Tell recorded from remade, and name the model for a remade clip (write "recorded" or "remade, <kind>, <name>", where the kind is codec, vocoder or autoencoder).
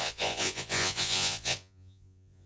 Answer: remade, vocoder, Vocos